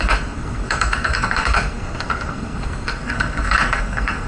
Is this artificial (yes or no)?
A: yes